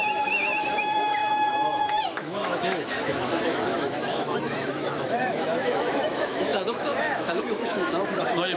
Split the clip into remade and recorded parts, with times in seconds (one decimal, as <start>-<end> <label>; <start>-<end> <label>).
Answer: 0.0-8.6 remade

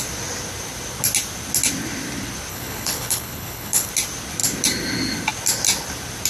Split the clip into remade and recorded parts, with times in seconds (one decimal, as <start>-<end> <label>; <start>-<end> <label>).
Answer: 0.0-2.5 recorded; 2.5-3.9 remade; 3.9-6.3 recorded

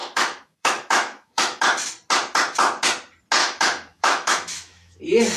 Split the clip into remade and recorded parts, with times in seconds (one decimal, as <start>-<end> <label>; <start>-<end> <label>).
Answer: 0.0-1.6 remade; 1.6-3.4 recorded; 3.4-5.0 remade; 5.0-5.4 recorded

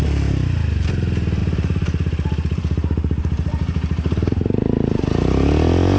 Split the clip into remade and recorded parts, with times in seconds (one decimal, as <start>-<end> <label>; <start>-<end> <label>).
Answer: 0.0-1.4 recorded; 1.4-5.0 remade; 5.0-6.0 recorded

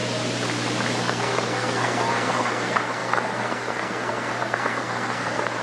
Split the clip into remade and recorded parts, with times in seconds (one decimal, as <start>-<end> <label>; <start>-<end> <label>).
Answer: 0.0-1.0 recorded; 1.0-5.6 remade

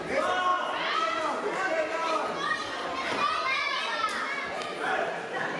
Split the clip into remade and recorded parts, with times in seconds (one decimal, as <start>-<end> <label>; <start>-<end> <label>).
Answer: 0.0-5.6 recorded